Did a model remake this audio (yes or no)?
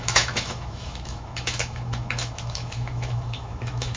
yes